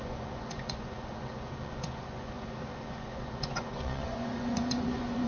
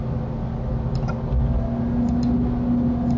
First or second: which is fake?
first